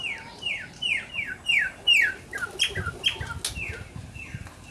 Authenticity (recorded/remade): recorded